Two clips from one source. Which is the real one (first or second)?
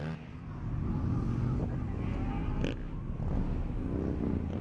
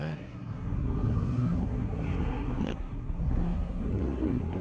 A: first